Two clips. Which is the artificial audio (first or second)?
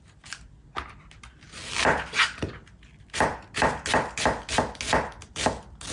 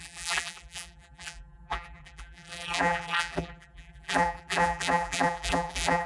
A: second